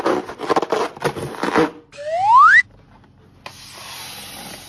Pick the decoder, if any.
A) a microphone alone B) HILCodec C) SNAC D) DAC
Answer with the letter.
A